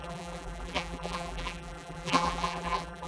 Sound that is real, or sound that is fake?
fake